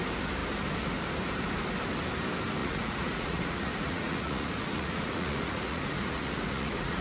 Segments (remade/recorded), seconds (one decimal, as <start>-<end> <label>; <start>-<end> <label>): 0.0-2.6 recorded; 2.6-7.0 remade